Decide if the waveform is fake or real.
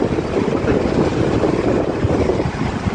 fake